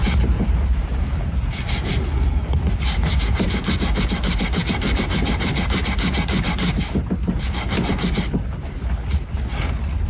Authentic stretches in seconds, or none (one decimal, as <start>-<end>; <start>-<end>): 0.0-10.1